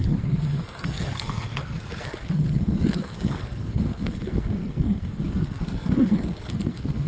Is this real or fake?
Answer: fake